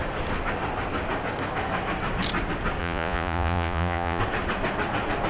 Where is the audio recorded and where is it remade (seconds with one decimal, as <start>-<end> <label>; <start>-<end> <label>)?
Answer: 0.0-2.8 recorded; 2.8-4.2 remade; 4.2-5.3 recorded